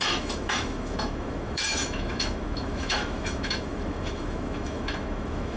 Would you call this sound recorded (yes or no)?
no